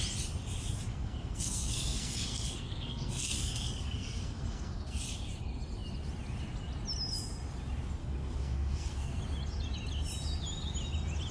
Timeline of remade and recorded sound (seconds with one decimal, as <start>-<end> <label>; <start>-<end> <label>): 0.0-0.9 recorded; 0.9-5.0 remade; 5.0-8.0 recorded; 8.0-9.2 remade; 9.2-11.3 recorded